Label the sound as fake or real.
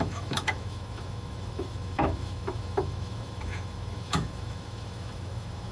fake